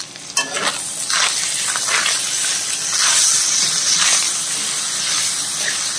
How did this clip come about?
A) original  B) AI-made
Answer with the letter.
A